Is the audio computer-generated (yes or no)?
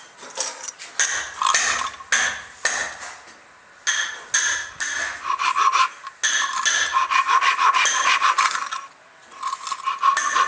no